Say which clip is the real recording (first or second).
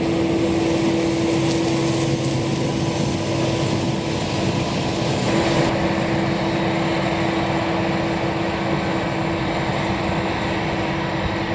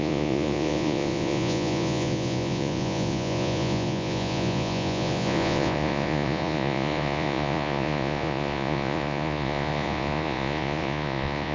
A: first